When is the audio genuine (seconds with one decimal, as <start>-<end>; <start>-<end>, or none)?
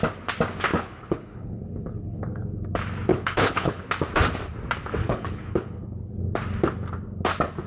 0.0-0.7; 2.2-3.1; 3.9-5.0; 6.2-7.7